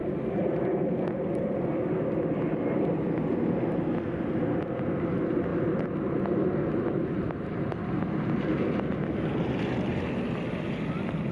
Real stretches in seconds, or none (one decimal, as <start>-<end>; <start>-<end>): 0.0-11.3